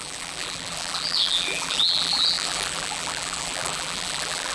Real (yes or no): no